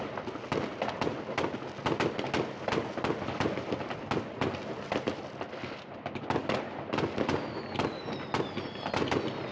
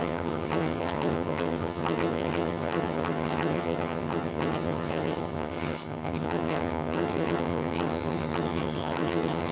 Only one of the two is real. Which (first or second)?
first